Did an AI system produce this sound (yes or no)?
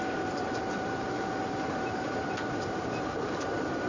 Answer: yes